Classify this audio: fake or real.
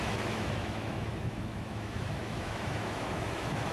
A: fake